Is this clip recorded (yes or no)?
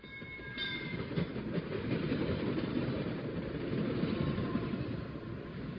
yes